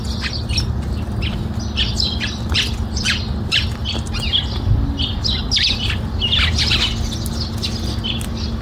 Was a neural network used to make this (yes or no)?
no